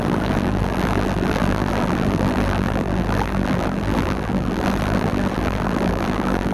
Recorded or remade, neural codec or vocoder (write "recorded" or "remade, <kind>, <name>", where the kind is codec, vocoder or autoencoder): remade, vocoder, BigVGAN v2